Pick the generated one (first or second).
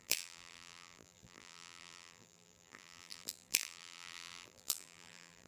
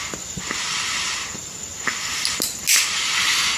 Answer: first